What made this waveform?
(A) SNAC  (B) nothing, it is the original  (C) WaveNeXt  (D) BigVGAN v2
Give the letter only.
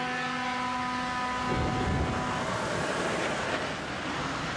B